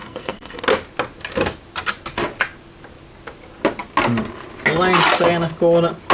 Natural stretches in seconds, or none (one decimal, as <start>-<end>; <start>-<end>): 0.6-6.1